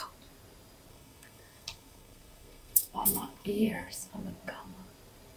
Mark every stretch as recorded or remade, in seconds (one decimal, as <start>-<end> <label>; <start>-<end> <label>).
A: 0.0-0.9 recorded; 0.9-4.1 remade; 4.1-5.4 recorded